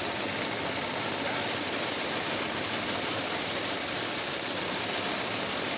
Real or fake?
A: real